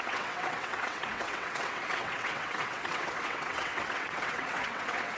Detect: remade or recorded remade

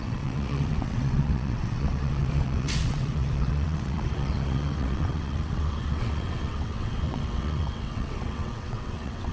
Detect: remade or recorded remade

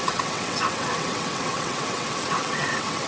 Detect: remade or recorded remade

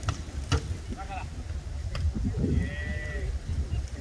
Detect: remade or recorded recorded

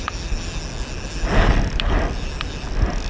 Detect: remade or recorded recorded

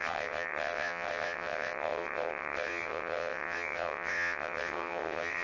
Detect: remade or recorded remade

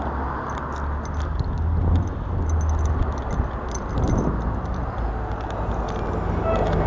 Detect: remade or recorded recorded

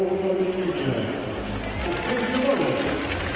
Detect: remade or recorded recorded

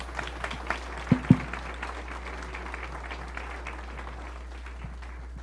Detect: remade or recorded recorded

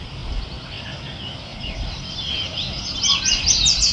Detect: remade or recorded recorded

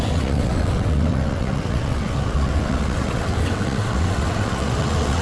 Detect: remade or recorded remade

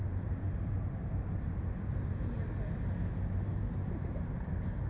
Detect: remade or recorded recorded